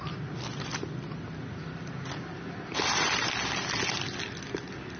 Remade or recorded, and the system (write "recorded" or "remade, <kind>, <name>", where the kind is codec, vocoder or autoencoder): recorded